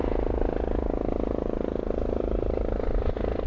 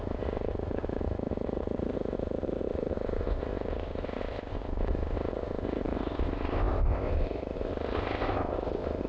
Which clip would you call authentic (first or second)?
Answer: first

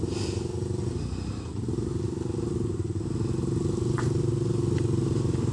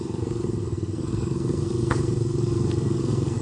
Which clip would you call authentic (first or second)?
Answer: first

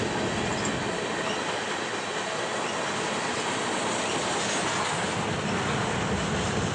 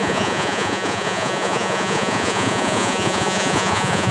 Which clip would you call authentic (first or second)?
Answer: first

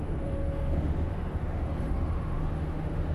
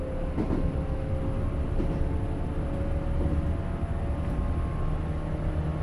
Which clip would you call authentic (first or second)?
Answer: second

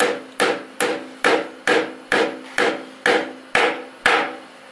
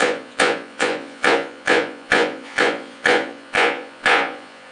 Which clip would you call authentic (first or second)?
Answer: first